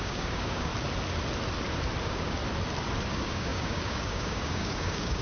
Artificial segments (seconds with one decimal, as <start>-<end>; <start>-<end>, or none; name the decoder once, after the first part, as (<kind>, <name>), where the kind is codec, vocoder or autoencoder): 0.0-0.7 (codec, DAC); 2.0-2.4; 3.1-5.2